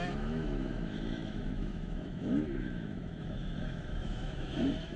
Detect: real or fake fake